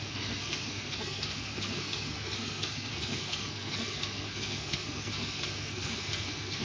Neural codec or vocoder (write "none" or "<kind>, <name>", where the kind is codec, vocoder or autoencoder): codec, SNAC